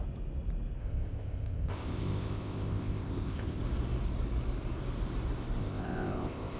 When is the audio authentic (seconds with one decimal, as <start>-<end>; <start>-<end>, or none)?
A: 0.0-0.8; 3.6-5.6